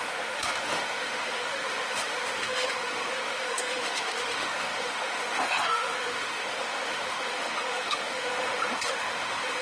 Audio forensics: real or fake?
fake